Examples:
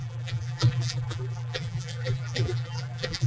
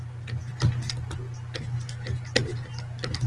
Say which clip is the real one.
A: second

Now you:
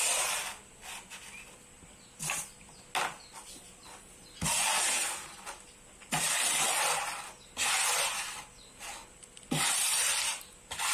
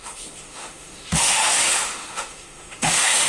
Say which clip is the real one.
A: first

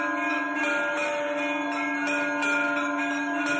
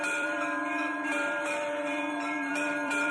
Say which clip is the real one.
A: first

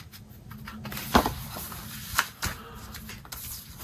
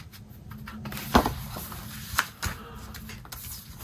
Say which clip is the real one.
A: second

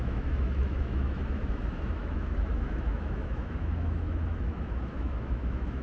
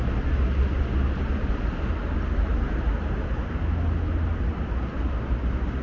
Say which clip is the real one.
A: second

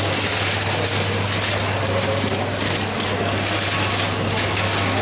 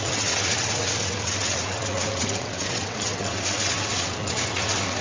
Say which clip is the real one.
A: first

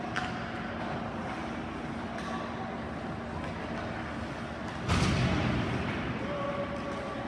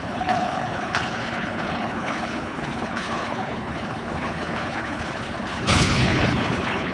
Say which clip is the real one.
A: first